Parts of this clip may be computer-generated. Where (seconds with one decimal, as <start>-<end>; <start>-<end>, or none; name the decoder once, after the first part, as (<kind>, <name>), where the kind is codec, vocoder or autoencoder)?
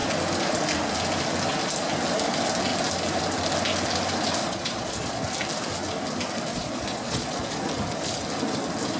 4.4-5.2 (vocoder, Vocos); 6.5-7.6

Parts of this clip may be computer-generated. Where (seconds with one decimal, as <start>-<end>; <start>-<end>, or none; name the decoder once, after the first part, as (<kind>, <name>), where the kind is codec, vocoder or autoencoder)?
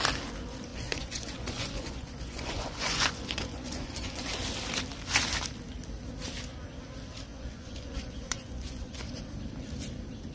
0.7-4.3 (vocoder, Vocos); 7.3-9.2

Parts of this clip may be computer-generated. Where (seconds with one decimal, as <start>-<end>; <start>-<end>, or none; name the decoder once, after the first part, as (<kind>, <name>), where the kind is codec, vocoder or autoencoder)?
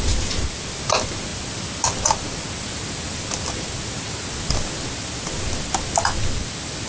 none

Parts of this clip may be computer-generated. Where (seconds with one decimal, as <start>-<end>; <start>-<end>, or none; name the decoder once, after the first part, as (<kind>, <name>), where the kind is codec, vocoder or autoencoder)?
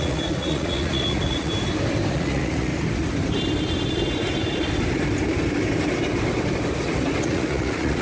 0.0-1.5 (vocoder, Vocos); 2.1-2.7; 7.2-8.0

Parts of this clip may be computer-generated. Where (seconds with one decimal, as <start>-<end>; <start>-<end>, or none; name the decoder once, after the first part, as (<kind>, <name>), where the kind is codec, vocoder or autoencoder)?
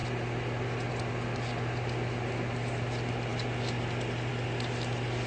none